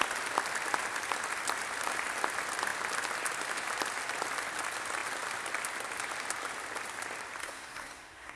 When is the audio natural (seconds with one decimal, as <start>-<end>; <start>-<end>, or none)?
0.0-7.4